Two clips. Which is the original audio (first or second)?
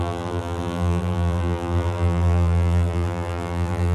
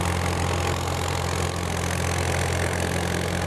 second